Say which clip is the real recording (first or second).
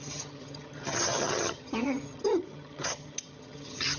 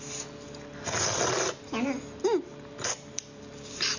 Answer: second